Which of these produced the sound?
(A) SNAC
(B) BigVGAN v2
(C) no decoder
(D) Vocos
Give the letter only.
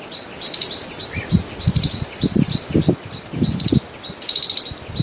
C